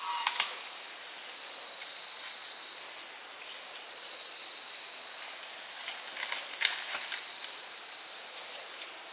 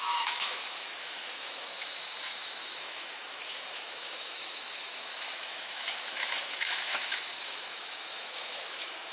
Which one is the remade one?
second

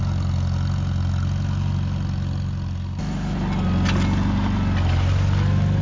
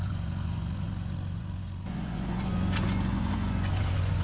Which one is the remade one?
second